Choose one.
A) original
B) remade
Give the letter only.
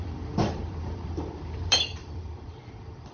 B